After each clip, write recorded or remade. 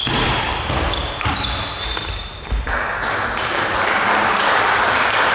remade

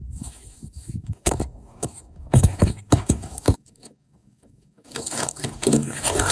remade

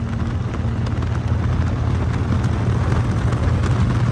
recorded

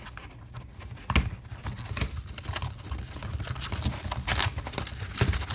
recorded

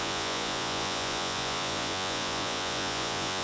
remade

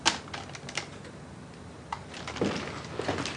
recorded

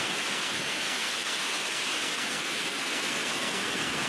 remade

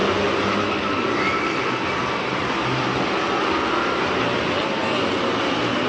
recorded